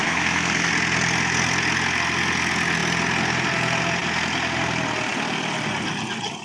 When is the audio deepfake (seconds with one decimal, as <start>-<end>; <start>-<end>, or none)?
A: 0.0-0.7